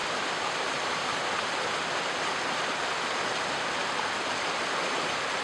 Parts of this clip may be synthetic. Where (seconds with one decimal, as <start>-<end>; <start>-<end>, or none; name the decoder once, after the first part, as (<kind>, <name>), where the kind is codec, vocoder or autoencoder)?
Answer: 0.0-3.2 (vocoder, BigVGAN v2)